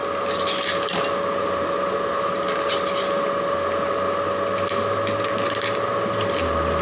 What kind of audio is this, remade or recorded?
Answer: recorded